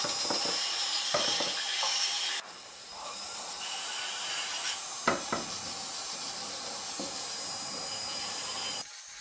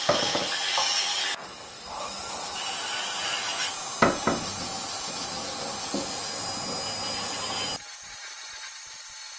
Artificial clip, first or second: first